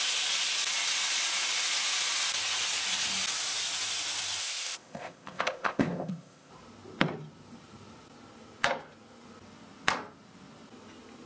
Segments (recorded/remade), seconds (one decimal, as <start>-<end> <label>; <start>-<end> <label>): 0.0-4.4 recorded; 4.4-6.5 remade; 6.5-11.3 recorded